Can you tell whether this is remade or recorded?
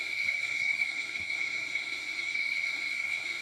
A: remade